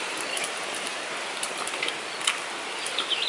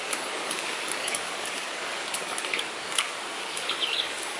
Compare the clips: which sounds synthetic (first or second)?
second